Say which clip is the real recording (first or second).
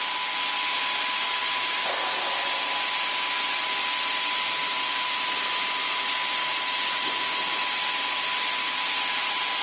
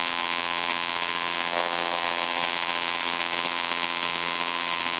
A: first